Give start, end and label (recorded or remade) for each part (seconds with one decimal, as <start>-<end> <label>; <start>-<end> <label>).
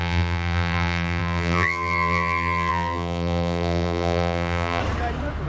0.0-4.8 remade; 4.8-5.5 recorded